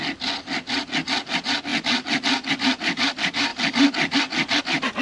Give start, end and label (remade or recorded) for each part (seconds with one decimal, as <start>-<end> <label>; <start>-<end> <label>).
0.0-5.0 recorded